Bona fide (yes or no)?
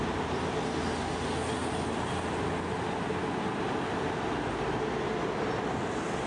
yes